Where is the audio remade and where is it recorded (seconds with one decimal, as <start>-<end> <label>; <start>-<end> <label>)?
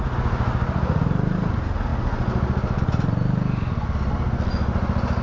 0.0-5.2 recorded